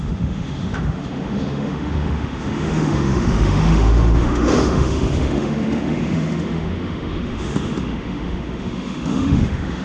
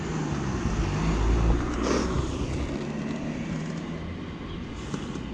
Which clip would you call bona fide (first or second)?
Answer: second